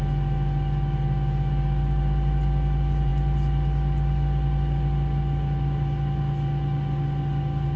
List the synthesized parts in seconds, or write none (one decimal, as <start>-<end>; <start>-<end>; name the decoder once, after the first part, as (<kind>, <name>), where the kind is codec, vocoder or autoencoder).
none